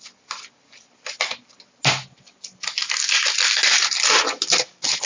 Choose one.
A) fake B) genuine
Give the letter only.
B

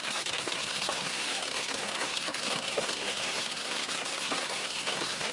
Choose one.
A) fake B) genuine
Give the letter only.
A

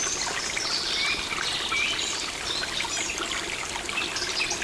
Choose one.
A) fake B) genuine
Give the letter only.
B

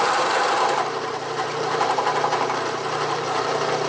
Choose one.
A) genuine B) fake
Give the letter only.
B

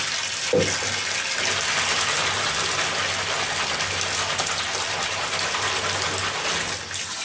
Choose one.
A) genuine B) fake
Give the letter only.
A